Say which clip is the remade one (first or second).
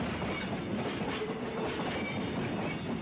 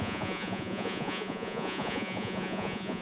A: second